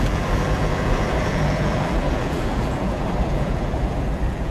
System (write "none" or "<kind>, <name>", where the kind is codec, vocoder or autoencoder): vocoder, BigVGAN v2